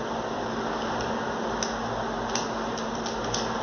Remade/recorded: recorded